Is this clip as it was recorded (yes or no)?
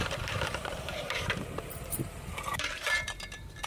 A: no